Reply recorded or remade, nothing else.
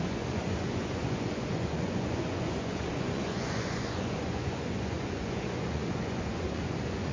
remade